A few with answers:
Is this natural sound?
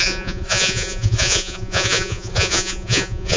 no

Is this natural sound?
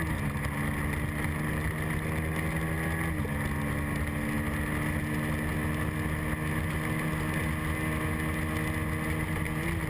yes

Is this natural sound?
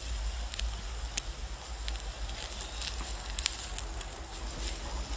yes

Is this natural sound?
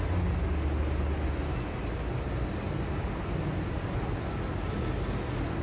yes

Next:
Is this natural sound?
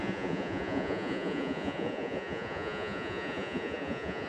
no